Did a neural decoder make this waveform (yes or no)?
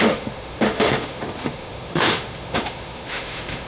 yes